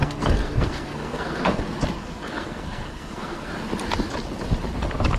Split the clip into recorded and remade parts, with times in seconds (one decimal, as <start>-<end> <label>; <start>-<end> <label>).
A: 0.0-1.6 remade; 1.6-2.0 recorded; 2.0-3.5 remade; 3.5-5.2 recorded